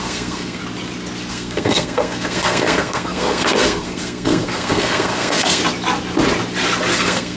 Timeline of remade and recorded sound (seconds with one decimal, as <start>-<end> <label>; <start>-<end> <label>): 0.0-0.6 remade; 0.6-1.3 recorded; 1.3-5.6 remade; 5.6-6.9 recorded; 6.9-7.4 remade